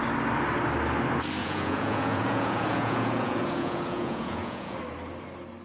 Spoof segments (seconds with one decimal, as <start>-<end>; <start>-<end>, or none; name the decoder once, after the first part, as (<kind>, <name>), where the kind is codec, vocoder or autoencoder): 1.4-4.8 (vocoder, Vocos)